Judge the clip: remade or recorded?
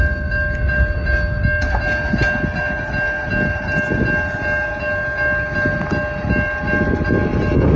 recorded